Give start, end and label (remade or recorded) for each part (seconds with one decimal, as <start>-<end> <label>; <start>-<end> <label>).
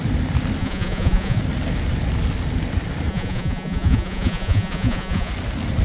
0.0-0.6 recorded; 0.6-1.4 remade; 1.4-3.1 recorded; 3.1-5.3 remade; 5.3-5.8 recorded